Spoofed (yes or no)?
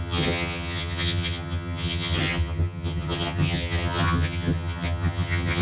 yes